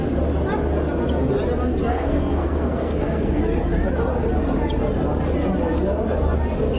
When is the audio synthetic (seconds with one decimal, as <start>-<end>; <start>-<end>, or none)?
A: 1.9-3.4